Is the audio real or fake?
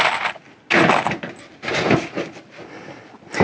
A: real